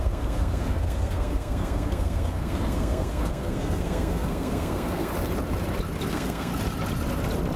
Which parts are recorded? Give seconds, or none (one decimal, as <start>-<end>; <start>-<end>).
5.1-6.1; 6.5-7.6